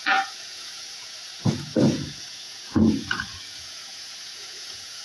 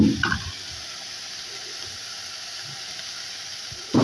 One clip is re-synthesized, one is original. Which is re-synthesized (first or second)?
first